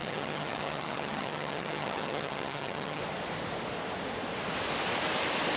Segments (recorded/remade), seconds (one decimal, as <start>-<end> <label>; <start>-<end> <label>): 0.0-3.0 remade; 3.0-5.6 recorded